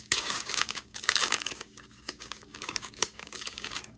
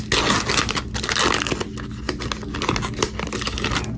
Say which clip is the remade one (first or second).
first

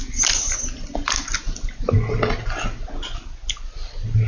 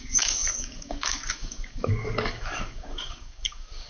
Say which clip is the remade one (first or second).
second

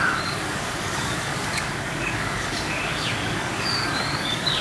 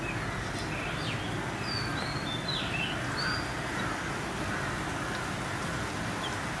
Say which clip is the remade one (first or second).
first